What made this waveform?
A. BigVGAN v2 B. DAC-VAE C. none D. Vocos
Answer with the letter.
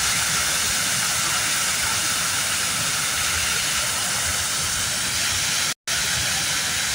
C